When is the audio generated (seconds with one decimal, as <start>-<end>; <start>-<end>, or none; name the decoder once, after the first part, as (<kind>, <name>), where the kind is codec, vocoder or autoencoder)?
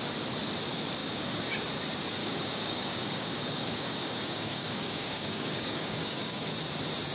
1.0-1.5 (codec, DAC); 2.2-6.5